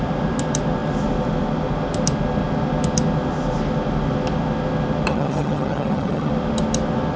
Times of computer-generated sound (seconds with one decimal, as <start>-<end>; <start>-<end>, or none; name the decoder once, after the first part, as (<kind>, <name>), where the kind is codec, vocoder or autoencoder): 5.1-6.3 (vocoder, HiFi-GAN)